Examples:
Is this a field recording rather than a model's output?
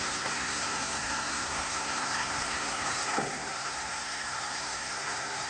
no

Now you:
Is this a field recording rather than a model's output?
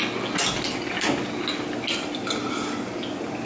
yes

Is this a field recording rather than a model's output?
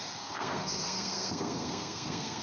no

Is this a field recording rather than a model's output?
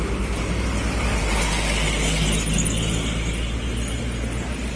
yes